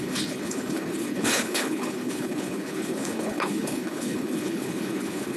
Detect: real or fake fake